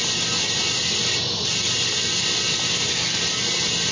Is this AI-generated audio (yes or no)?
no